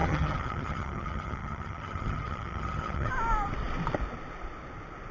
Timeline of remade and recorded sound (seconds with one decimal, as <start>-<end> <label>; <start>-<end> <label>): 0.0-3.1 remade; 3.1-5.1 recorded